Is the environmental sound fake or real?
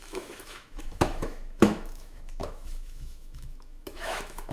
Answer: fake